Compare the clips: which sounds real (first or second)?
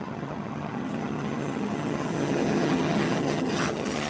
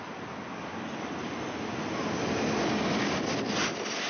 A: second